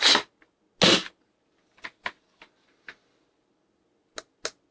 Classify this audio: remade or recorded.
recorded